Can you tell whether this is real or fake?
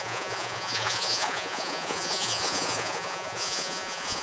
fake